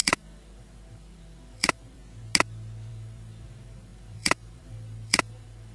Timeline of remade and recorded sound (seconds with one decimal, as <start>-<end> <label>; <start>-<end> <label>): 0.0-2.0 remade; 2.0-2.9 recorded; 2.9-5.7 remade